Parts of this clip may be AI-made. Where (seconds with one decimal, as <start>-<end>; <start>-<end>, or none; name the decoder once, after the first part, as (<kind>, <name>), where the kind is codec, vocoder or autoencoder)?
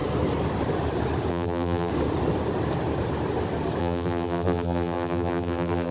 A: 1.3-1.9 (vocoder, BigVGAN v2); 3.8-5.9